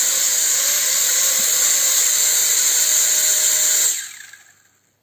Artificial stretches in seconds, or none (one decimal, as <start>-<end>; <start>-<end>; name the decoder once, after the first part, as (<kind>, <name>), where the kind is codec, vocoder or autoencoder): 0.8-2.0 (vocoder, BigVGAN v2); 2.4-4.0